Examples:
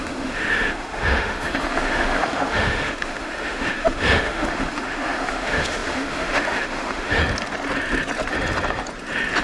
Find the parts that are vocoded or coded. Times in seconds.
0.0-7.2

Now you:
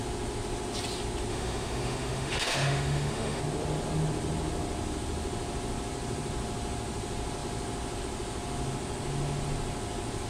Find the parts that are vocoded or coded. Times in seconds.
1.3-3.4

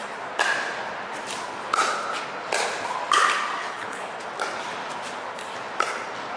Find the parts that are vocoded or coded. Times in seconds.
3.6-4.1

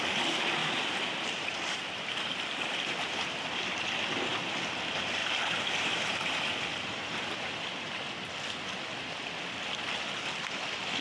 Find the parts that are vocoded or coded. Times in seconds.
0.6-2.3; 3.0-3.9; 5.2-7.4

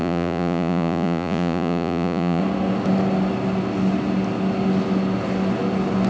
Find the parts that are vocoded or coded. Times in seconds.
0.0-2.4